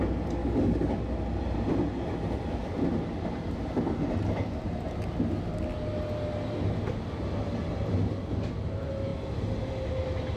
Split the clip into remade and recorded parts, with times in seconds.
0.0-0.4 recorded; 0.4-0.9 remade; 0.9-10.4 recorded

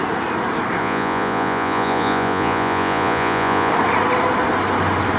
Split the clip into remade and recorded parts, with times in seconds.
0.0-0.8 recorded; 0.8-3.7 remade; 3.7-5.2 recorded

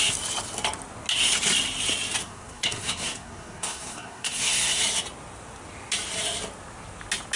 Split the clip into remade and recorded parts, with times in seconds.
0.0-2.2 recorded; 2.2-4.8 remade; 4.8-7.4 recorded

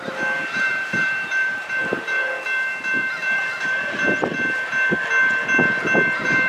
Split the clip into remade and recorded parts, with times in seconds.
0.0-0.7 recorded; 0.7-4.0 remade; 4.0-6.5 recorded

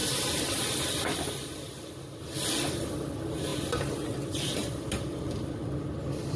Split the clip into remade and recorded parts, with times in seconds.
0.0-6.4 recorded

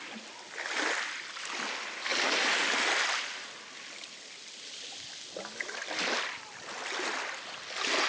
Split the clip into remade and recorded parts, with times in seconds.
0.0-8.1 recorded

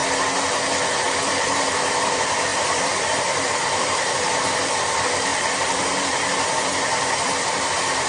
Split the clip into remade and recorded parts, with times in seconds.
0.0-1.3 recorded; 1.3-8.1 remade

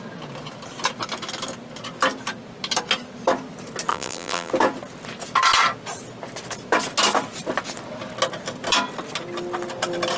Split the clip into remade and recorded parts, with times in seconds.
0.0-3.9 recorded; 3.9-4.5 remade; 4.5-10.2 recorded